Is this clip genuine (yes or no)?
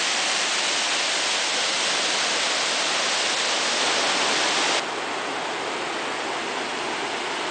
yes